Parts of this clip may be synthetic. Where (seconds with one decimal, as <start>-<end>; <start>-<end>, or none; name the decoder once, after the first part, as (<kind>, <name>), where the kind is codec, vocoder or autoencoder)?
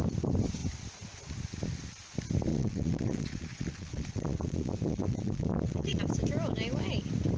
2.5-6.0 (vocoder, Vocos)